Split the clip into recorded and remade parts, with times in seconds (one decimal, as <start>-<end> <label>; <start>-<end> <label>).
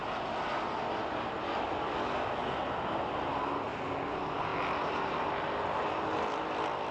0.0-6.9 recorded